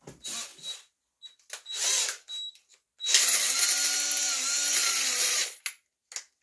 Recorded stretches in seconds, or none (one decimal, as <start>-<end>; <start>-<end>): 0.0-4.8; 5.6-6.4